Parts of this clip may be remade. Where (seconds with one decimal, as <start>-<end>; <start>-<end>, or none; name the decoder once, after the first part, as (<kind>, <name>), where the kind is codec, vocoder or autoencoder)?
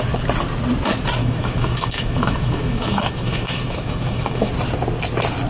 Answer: 1.2-4.5 (autoencoder, DAC-VAE)